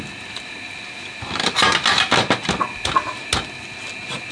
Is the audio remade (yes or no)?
no